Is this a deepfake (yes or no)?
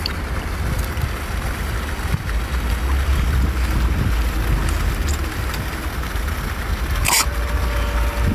no